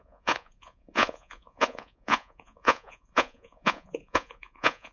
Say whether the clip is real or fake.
fake